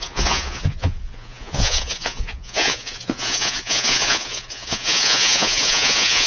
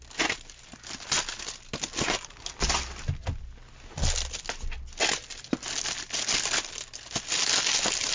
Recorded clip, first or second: second